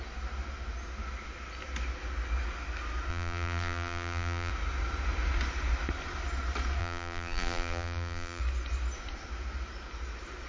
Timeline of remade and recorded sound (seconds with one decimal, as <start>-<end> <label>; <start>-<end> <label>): 0.0-3.1 recorded; 3.1-4.5 remade; 4.5-6.8 recorded; 6.8-8.4 remade; 8.4-10.5 recorded